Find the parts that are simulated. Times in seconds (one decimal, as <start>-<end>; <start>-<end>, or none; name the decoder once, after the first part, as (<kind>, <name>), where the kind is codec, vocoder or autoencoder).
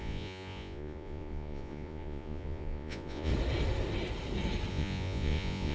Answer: 0.0-3.3 (vocoder, Vocos); 4.7-5.7